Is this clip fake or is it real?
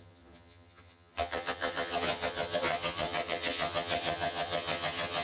fake